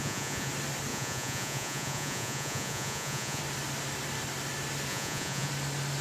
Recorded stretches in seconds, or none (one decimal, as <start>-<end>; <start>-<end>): 0.5-0.9; 3.4-4.9; 5.5-6.0